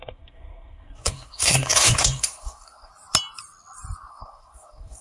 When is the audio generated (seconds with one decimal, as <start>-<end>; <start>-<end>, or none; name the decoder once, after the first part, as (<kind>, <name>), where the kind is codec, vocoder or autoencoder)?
0.0-2.9 (codec, SNAC); 4.1-5.0